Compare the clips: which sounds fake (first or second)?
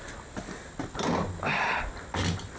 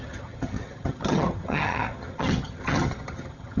second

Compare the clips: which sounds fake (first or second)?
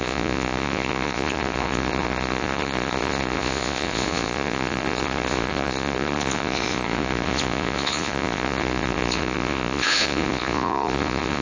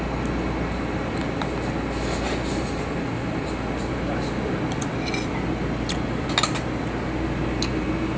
first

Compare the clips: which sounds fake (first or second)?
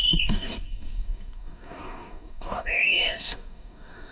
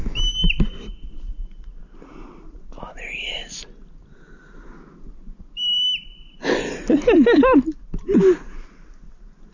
first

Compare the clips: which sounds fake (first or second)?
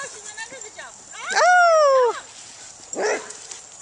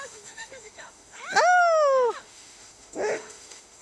second